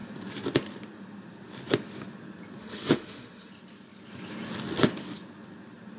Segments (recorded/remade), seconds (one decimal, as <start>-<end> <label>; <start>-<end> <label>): 0.0-2.6 recorded; 2.6-3.5 remade; 3.5-6.0 recorded